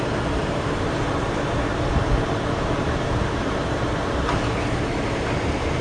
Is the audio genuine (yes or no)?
no